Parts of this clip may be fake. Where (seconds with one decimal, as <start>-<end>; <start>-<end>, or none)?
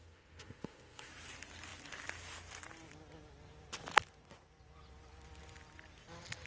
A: 0.0-1.1